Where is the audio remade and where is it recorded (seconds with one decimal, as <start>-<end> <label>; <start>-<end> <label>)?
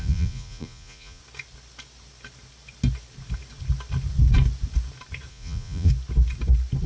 0.0-1.2 remade; 1.2-5.3 recorded; 5.3-5.9 remade; 5.9-6.9 recorded